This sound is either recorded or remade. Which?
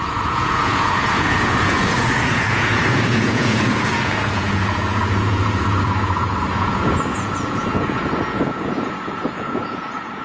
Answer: remade